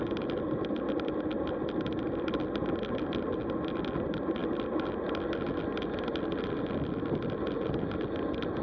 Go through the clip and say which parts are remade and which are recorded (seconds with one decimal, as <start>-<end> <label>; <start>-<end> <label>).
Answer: 0.0-8.6 recorded